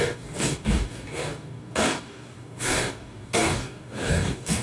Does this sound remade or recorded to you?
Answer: remade